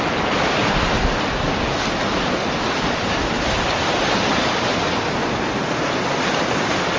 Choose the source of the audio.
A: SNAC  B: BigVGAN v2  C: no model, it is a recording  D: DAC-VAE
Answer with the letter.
C